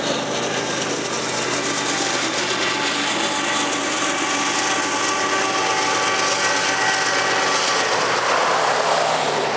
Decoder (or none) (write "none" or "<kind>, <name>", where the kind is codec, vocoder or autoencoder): none